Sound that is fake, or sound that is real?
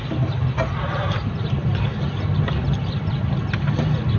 real